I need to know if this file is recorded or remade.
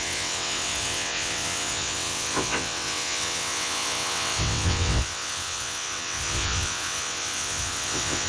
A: remade